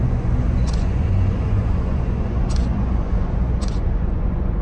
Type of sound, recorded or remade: remade